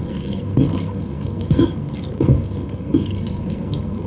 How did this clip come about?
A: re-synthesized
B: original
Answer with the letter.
A